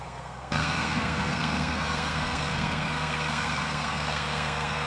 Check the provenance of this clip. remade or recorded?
remade